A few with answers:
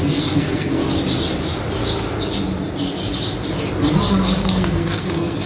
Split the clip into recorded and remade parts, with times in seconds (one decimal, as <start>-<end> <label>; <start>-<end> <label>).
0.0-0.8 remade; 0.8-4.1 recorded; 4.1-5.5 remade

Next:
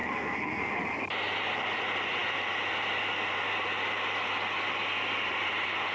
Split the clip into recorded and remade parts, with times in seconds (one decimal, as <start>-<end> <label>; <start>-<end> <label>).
0.0-0.7 remade; 0.7-5.9 recorded

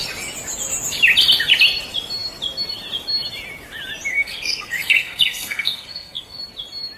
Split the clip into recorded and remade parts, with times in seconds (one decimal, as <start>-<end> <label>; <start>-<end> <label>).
0.0-4.1 recorded; 4.1-6.4 remade; 6.4-7.0 recorded

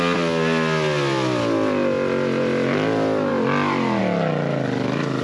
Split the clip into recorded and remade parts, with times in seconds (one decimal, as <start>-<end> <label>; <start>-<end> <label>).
0.0-5.2 recorded

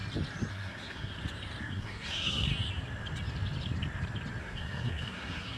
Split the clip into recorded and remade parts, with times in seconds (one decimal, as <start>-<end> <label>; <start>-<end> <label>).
0.0-0.5 recorded; 0.5-1.1 remade; 1.1-1.6 recorded; 1.6-2.5 remade; 2.5-4.4 recorded; 4.4-5.6 remade